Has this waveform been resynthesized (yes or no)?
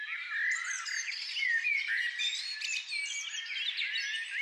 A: no